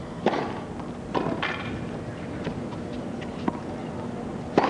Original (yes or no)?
yes